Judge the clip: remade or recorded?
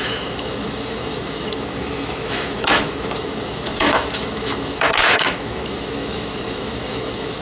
remade